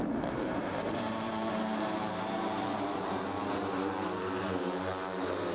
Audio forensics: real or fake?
fake